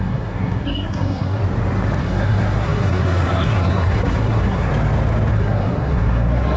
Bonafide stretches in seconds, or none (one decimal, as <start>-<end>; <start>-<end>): 1.4-2.0; 4.7-5.3